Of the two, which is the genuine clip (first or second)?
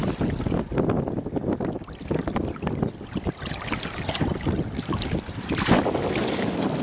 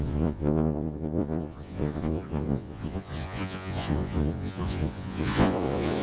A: first